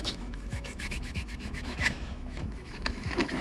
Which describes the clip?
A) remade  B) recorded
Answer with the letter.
A